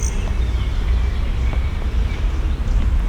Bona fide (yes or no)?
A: yes